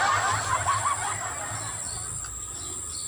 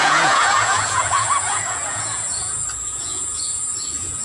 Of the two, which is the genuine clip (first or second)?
first